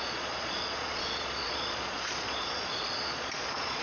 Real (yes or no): no